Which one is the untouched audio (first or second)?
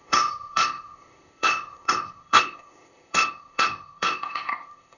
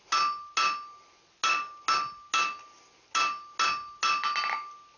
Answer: second